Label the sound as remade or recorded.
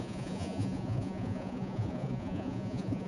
remade